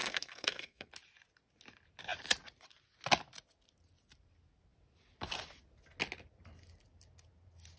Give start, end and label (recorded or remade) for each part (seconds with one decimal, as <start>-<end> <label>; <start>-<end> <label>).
0.0-0.9 remade; 0.9-7.8 recorded